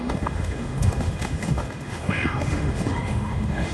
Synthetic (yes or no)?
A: yes